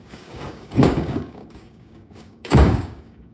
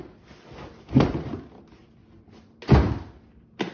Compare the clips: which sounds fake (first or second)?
first